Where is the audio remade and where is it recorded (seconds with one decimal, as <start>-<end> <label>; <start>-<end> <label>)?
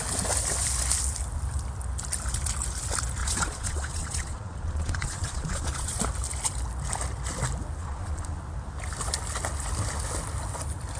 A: 0.0-3.2 recorded; 3.2-6.0 remade; 6.0-7.8 recorded; 7.8-8.4 remade; 8.4-11.0 recorded